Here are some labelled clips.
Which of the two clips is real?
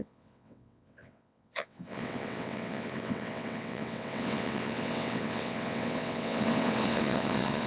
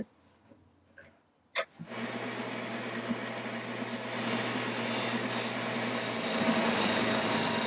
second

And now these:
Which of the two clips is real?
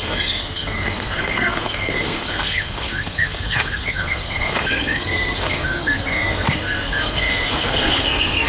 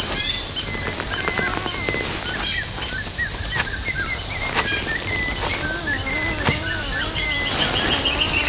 second